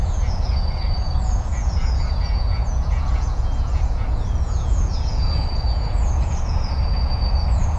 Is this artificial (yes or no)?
yes